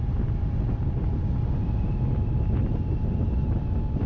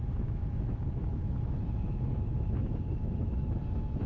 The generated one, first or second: second